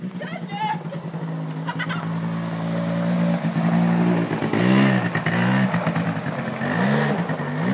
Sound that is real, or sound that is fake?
real